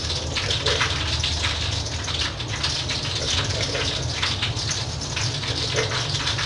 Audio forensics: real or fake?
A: real